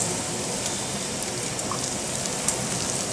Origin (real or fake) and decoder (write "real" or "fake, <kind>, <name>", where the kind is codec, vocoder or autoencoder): real